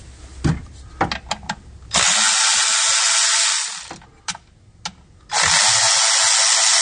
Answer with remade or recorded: recorded